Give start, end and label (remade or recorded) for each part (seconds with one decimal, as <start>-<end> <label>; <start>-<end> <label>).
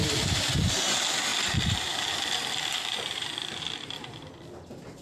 0.0-1.3 recorded; 1.3-4.3 remade; 4.3-5.0 recorded